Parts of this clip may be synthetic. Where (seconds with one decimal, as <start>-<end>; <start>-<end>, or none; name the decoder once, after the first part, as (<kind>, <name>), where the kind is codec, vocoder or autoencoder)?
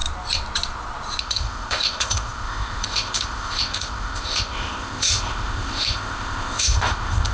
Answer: 1.2-7.3 (codec, ZipCodec)